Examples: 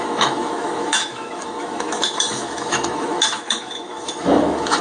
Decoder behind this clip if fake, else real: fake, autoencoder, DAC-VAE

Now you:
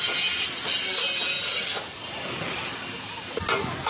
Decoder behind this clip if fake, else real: real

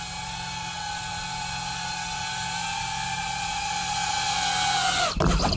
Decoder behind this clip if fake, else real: real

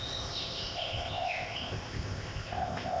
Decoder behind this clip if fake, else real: fake, codec, ZipCodec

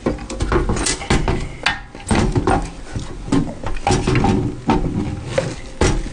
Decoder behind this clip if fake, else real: real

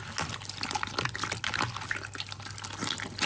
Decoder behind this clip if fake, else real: real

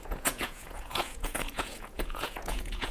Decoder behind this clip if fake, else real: fake, vocoder, Vocos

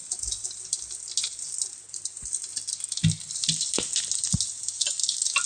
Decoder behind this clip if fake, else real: real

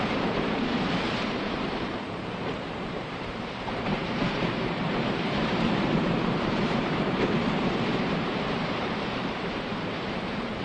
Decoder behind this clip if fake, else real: fake, vocoder, BigVGAN v2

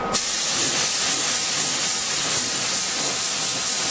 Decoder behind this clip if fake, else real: real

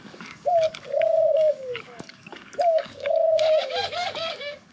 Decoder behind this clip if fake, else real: fake, codec, DAC